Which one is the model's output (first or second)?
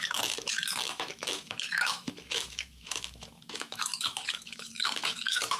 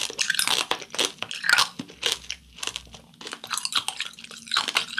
first